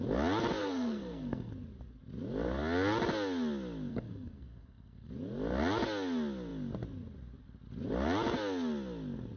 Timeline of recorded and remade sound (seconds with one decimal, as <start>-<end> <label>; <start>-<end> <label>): 0.0-0.6 recorded; 0.6-1.5 remade; 1.5-3.9 recorded; 3.9-5.1 remade; 5.1-9.4 recorded